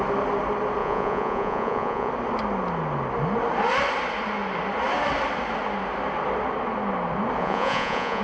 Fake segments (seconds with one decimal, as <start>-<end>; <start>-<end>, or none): 0.8-2.1; 7.4-8.2